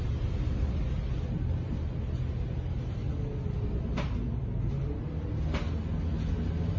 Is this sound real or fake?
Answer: real